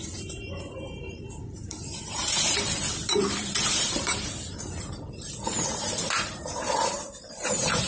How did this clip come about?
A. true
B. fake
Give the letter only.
B